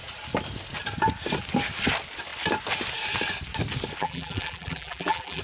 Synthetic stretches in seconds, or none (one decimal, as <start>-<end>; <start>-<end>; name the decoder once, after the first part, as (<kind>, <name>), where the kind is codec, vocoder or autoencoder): 4.0-5.4 (vocoder, BigVGAN v2)